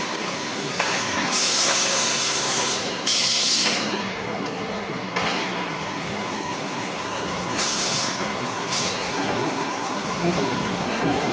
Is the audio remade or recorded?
remade